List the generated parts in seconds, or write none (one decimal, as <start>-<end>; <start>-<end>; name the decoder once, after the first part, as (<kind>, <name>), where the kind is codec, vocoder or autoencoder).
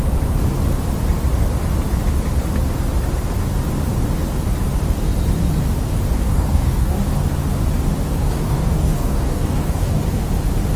6.2-7.1 (codec, DAC); 8.2-10.0